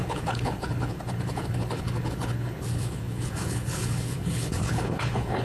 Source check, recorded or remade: remade